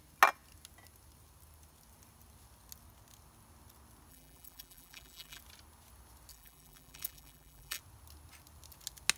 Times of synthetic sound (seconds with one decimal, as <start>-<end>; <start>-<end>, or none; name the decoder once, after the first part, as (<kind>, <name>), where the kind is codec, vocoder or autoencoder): 4.1-5.4 (vocoder, BigVGAN v2); 6.3-7.8